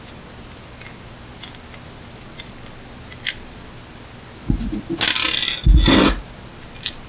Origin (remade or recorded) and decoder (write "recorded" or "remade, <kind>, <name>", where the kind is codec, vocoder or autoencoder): recorded